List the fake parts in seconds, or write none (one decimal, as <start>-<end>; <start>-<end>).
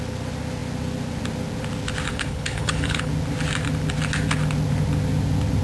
2.1-3.1